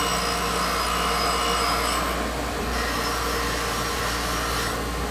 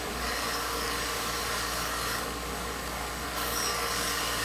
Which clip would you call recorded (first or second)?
first